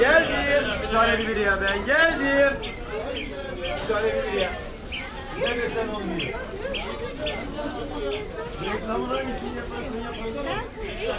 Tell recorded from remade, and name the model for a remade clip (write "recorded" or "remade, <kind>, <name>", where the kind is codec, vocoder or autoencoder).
recorded